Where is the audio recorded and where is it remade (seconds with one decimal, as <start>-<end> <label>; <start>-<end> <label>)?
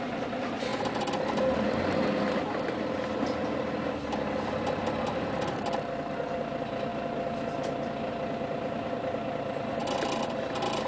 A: 0.0-10.9 recorded